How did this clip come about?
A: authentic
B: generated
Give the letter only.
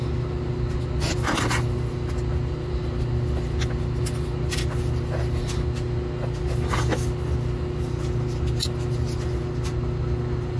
A